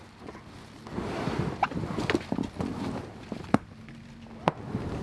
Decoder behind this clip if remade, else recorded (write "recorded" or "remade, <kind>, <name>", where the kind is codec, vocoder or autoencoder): recorded